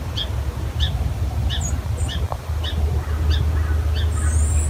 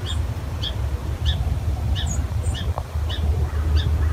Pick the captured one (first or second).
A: first